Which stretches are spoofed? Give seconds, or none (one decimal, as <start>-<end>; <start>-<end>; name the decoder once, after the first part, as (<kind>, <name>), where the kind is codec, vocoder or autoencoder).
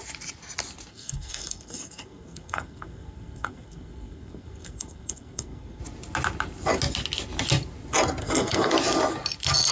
0.9-5.8 (codec, SNAC); 8.2-8.7